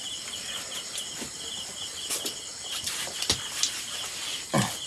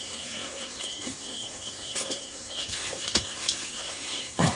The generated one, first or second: second